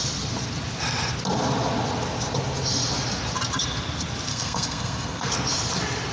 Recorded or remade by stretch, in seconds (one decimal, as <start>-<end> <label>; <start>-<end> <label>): 0.0-4.3 recorded; 4.3-5.3 remade; 5.3-6.1 recorded

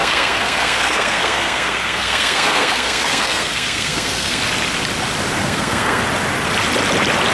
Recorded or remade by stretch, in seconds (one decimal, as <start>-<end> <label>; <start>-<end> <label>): 0.0-4.4 remade; 4.4-5.4 recorded; 5.4-6.0 remade; 6.0-7.3 recorded